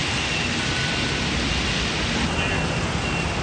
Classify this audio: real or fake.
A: real